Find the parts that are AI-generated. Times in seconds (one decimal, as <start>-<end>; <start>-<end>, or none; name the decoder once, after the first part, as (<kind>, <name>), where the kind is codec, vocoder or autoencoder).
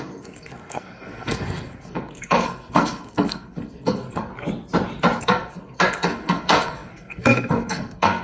0.0-4.3 (codec, SNAC); 5.2-8.2